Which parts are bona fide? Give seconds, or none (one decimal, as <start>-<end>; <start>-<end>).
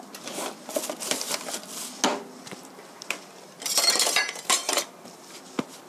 0.0-2.1; 5.2-5.9